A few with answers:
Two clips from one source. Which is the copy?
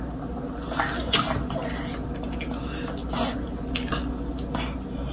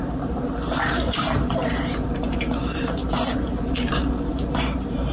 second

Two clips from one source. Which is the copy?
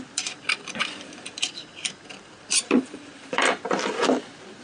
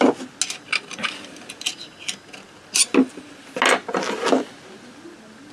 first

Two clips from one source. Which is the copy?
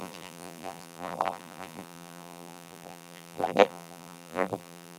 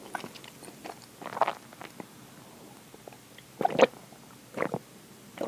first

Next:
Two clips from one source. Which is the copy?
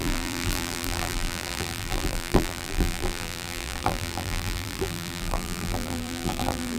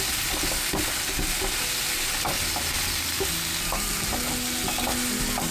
first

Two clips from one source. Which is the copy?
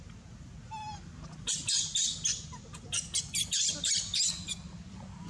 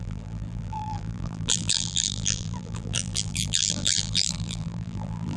second